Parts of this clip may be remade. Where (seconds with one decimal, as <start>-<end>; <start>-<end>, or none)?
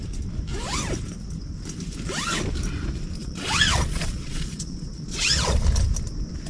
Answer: 3.2-5.6